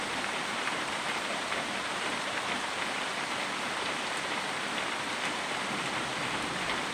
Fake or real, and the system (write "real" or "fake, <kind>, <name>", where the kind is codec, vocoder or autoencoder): fake, vocoder, BigVGAN v2